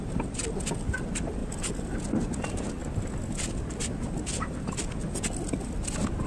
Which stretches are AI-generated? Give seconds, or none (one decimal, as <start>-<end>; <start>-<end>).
none